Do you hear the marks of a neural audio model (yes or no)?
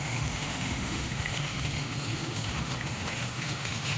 yes